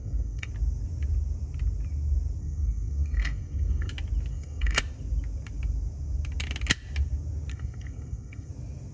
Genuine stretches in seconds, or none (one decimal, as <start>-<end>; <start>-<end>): 0.5-2.4; 3.9-4.3; 4.8-7.5; 8.5-8.9